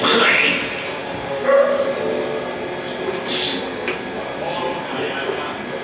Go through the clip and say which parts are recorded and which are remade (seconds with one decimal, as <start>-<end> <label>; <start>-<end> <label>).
0.0-1.0 recorded; 1.0-1.8 remade; 1.8-5.8 recorded